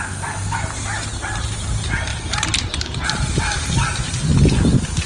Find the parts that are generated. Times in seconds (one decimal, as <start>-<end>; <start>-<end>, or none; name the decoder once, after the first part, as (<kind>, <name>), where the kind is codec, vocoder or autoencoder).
2.1-4.1 (vocoder, BigVGAN v2)